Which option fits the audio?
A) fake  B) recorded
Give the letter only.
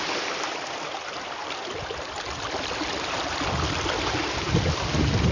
B